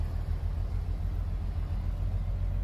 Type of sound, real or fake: real